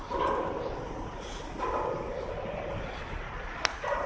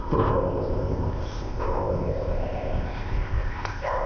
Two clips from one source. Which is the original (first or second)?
first